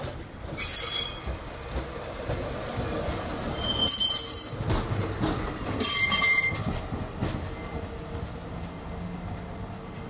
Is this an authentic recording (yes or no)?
yes